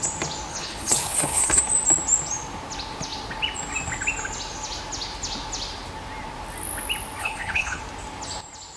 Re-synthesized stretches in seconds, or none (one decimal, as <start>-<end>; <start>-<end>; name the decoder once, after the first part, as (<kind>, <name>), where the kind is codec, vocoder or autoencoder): 0.5-1.6 (codec, HILCodec); 7.2-7.8